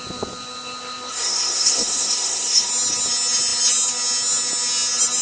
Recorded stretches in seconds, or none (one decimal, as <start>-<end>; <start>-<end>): 0.0-1.1; 2.7-5.2